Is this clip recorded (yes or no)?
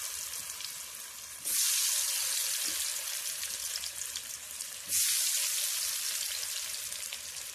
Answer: yes